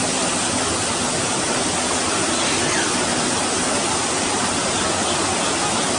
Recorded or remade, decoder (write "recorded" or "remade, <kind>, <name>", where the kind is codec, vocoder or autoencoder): recorded